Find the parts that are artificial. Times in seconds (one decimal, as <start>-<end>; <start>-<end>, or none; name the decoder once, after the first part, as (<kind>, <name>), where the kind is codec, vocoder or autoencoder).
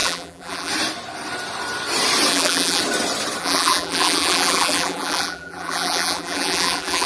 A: 0.0-0.7 (vocoder, BigVGAN v2); 2.3-2.8; 3.4-7.1